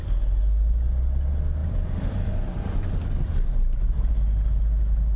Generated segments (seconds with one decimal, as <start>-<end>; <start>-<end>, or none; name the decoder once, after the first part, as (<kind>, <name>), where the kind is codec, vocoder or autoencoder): 1.6-4.1 (vocoder, BigVGAN v2)